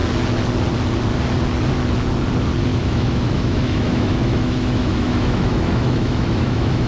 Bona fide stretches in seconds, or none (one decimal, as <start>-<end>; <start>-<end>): 0.0-2.7